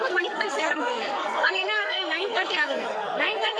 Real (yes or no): no